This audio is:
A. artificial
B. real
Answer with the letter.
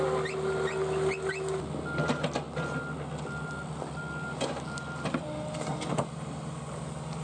B